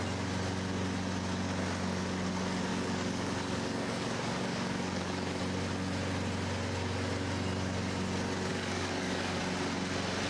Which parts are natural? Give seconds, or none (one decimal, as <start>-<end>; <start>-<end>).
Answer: 0.0-2.7; 5.4-8.5; 9.4-10.3